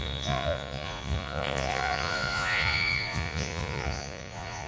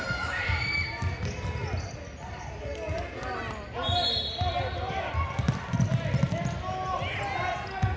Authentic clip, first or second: second